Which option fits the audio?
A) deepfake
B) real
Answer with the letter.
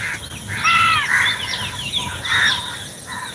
B